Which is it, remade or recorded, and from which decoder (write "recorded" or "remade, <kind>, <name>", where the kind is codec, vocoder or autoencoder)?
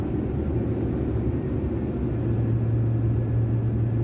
recorded